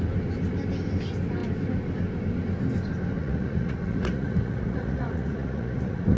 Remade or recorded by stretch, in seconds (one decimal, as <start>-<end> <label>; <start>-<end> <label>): 0.0-3.2 recorded; 3.2-6.2 remade